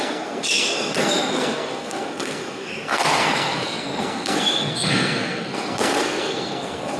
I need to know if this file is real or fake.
fake